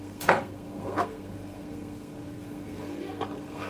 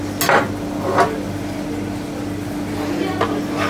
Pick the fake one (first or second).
first